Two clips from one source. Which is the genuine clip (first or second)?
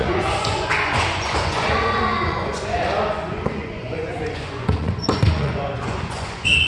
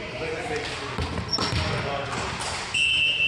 second